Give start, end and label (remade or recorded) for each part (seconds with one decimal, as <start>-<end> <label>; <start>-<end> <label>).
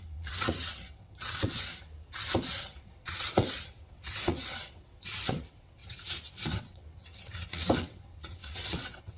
0.0-1.7 remade; 1.7-2.5 recorded; 2.5-5.8 remade; 5.8-6.3 recorded; 6.3-9.2 remade